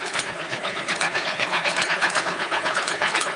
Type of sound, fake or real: fake